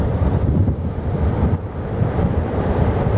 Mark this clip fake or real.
real